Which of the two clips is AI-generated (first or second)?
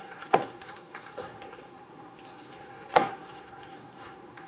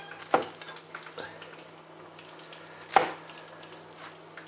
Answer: first